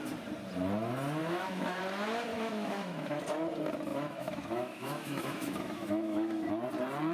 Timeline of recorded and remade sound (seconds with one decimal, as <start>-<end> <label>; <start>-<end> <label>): 0.0-1.2 recorded; 1.2-1.8 remade; 1.8-2.3 recorded; 2.3-3.2 remade; 3.2-3.9 recorded; 3.9-6.5 remade; 6.5-7.1 recorded